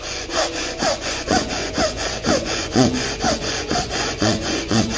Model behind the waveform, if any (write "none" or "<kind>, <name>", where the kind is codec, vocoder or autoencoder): vocoder, Vocos